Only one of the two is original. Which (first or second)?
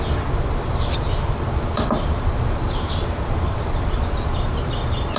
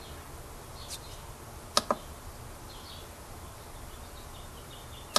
second